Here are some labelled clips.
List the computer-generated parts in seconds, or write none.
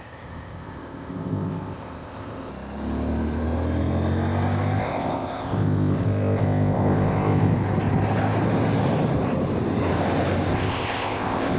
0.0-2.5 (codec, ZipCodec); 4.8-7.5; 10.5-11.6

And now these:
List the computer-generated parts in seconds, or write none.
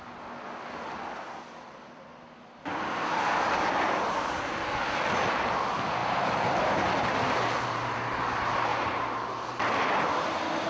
6.0-8.2 (vocoder, BigVGAN v2); 8.7-9.3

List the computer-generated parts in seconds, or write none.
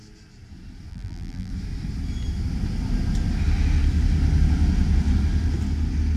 0.9-1.5 (vocoder, BigVGAN v2)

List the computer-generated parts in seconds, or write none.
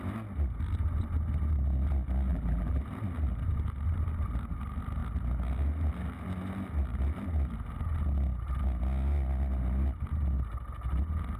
2.3-2.8 (vocoder, BigVGAN v2)